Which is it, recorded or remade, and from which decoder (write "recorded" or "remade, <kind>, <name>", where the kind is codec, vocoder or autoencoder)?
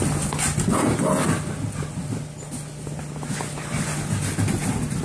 recorded